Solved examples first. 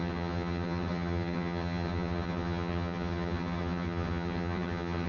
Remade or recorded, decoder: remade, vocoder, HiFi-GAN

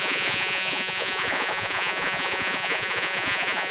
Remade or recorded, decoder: remade, vocoder, Vocos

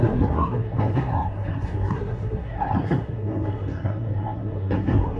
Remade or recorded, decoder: remade, codec, SNAC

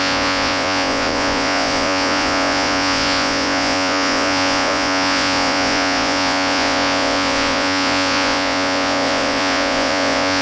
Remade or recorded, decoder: remade, vocoder, Vocos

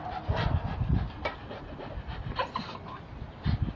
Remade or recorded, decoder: recorded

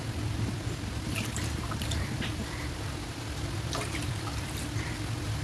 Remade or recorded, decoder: remade, vocoder, BigVGAN v2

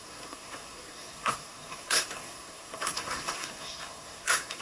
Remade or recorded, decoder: remade, codec, SNAC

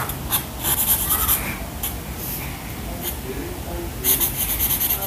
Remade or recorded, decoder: recorded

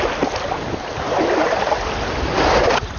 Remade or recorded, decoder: recorded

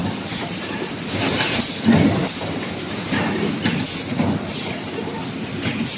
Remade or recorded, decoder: recorded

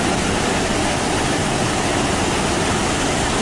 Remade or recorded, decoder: recorded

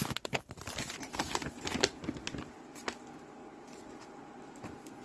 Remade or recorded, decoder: recorded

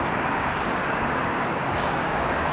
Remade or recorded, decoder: remade, codec, DAC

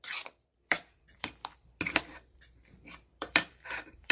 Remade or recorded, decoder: remade, vocoder, BigVGAN v2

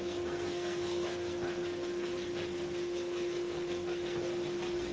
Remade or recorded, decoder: remade, codec, SNAC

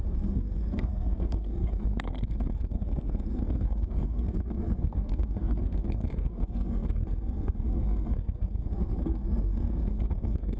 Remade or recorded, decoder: remade, codec, SNAC